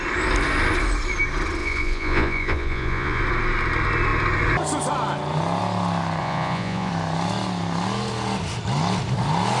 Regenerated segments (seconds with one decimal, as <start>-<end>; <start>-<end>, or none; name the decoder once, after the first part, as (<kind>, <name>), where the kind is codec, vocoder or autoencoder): 1.6-3.2 (vocoder, Vocos); 6.2-6.9